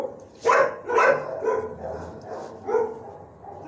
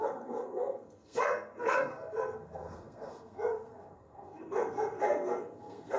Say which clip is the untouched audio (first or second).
first